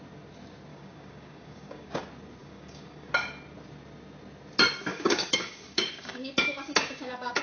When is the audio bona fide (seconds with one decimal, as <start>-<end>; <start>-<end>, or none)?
0.0-0.7; 2.0-2.4; 3.1-4.9